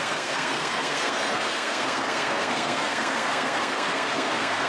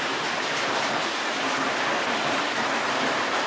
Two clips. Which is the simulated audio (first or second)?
first